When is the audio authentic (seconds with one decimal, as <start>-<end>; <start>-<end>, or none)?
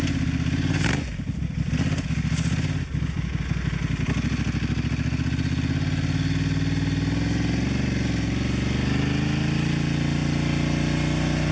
0.0-11.5